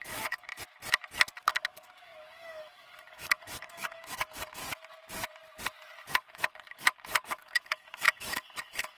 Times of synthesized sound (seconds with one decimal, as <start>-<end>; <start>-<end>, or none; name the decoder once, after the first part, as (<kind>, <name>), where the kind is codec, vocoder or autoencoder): 0.0-0.5 (codec, DAC); 1.4-4.6; 6.1-9.0